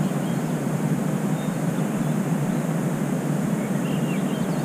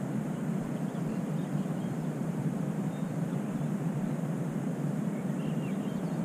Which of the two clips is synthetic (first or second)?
second